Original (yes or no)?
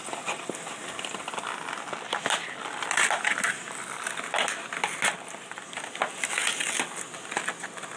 yes